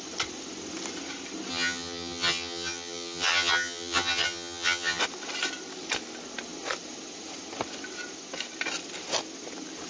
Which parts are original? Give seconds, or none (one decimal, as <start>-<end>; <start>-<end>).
0.0-1.5; 5.0-9.9